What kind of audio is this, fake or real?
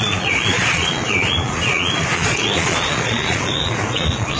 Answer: fake